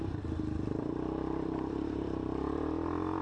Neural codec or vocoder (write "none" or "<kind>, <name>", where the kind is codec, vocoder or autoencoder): vocoder, BigVGAN v2